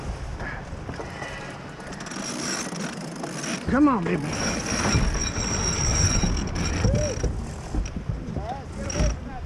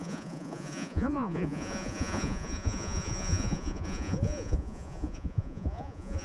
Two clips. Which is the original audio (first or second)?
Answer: first